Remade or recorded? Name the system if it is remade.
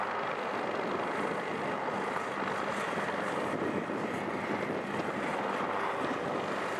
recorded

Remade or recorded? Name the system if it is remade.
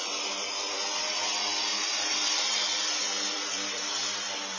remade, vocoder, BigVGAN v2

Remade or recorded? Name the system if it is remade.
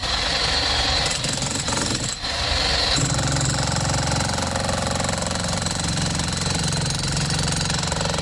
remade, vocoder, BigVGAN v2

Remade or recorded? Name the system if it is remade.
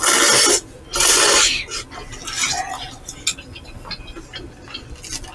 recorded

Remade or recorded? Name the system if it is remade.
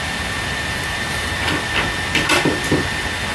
recorded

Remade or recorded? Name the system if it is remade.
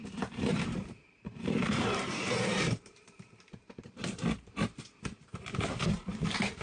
remade, vocoder, BigVGAN v2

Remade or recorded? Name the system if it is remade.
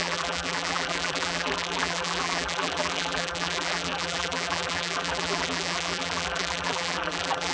remade, vocoder, BigVGAN v2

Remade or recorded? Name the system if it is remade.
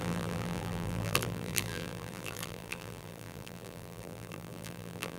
remade, vocoder, BigVGAN v2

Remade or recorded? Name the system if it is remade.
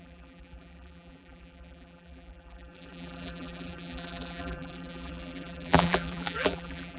remade, vocoder, BigVGAN v2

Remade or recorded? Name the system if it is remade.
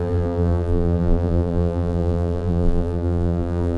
remade, vocoder, BigVGAN v2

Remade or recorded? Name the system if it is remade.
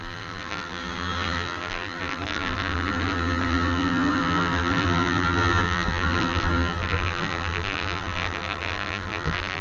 remade, vocoder, BigVGAN v2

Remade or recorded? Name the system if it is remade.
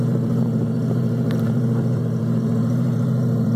remade, vocoder, BigVGAN v2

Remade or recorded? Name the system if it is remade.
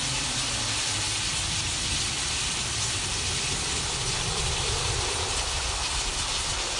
remade, vocoder, BigVGAN v2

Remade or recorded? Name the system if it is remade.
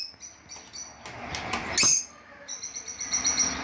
recorded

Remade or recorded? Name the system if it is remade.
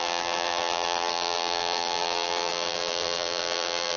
remade, vocoder, BigVGAN v2